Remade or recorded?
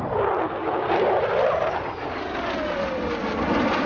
recorded